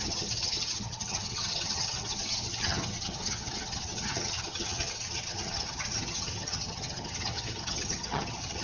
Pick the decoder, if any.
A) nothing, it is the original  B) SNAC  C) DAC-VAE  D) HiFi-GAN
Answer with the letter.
D